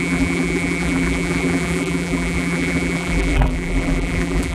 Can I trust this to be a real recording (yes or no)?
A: no